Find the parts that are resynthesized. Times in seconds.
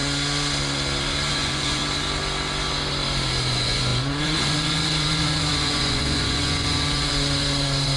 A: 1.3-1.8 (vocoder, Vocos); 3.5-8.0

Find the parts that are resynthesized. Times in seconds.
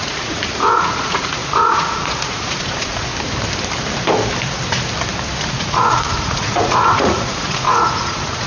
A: 0.0-3.1 (vocoder, Vocos); 5.4-8.5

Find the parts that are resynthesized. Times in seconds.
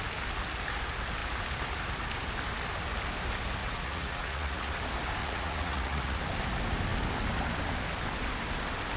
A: 3.6-4.7 (vocoder, Vocos); 5.2-6.2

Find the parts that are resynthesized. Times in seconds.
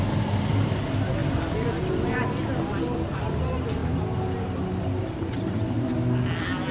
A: none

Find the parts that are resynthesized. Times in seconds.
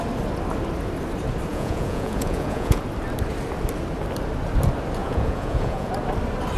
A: 1.5-2.8 (vocoder, Vocos); 5.0-5.9